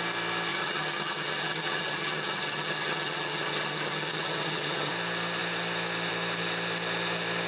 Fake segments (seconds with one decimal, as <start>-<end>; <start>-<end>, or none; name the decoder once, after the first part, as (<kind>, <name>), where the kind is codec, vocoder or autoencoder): 0.5-4.9 (vocoder, HiFi-GAN)